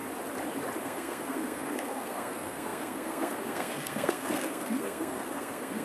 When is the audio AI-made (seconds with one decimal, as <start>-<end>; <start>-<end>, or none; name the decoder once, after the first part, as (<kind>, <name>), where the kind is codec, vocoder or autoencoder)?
0.8-5.8 (codec, SNAC)

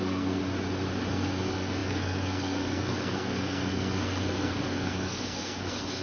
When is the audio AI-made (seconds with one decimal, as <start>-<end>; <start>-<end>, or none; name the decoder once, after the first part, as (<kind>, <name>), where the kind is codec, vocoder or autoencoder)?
0.0-0.4 (codec, SNAC); 1.1-6.0

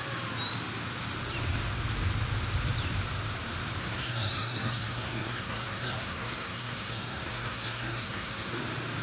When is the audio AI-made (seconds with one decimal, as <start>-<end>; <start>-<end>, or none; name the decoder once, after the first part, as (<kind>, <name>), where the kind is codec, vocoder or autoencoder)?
3.8-8.6 (codec, SNAC)

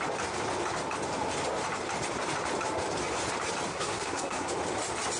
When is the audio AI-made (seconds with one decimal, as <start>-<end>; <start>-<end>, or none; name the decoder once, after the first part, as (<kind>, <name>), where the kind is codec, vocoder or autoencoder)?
3.7-4.5 (codec, SNAC)

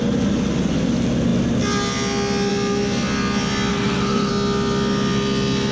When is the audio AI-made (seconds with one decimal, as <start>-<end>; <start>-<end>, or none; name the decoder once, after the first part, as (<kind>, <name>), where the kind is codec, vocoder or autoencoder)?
3.7-4.3 (codec, SNAC)

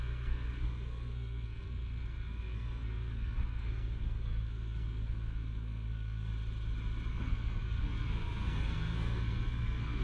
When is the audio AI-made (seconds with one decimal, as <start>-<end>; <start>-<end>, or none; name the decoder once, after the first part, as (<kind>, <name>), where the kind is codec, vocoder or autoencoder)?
0.0-6.3 (codec, SNAC); 7.1-10.0

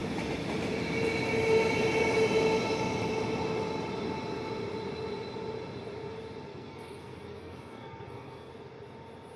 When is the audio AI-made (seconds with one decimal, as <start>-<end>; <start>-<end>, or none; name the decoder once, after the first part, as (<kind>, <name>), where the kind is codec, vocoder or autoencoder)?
6.5-8.5 (codec, SNAC)